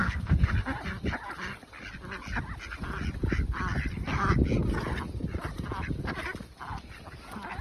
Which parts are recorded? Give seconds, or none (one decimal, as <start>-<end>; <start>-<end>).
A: 0.5-7.6